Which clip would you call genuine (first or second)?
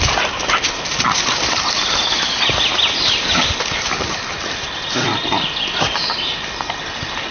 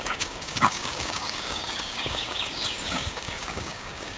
first